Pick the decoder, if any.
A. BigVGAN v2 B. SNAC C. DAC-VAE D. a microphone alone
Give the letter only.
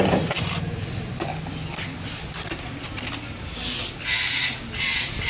D